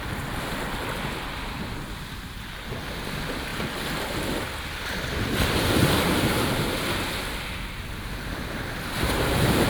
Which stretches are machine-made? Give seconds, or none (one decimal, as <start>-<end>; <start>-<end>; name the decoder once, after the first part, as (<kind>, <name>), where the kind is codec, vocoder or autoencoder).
none